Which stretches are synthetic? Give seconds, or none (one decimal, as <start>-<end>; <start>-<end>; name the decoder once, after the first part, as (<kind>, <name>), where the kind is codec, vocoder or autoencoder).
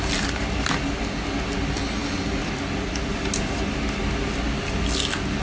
none